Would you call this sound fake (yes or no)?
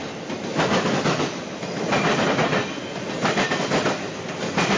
no